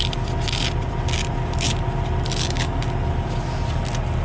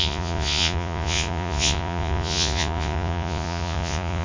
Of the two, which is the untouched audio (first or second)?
first